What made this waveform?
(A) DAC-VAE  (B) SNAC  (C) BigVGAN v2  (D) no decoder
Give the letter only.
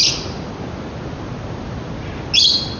D